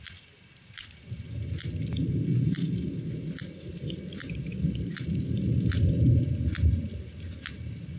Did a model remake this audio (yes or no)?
no